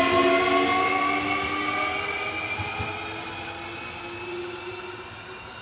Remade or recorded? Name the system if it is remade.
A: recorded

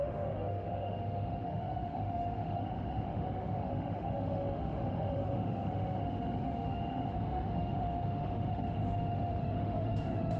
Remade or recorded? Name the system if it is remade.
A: remade, autoencoder, DAC-VAE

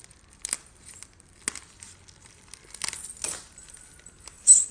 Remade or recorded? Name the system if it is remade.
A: recorded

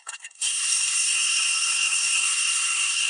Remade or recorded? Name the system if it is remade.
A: remade, codec, SNAC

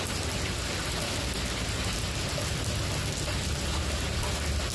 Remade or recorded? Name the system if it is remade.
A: recorded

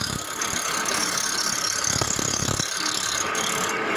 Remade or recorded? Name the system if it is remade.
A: remade, codec, DAC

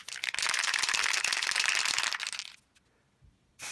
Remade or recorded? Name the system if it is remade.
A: recorded